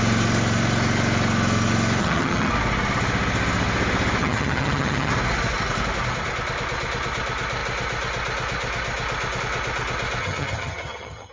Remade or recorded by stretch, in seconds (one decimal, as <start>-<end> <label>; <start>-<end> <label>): 0.0-2.0 recorded; 2.0-2.5 remade; 2.5-4.2 recorded; 4.2-5.1 remade; 5.1-10.2 recorded; 10.2-11.3 remade